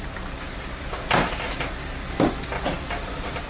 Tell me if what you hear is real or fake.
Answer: fake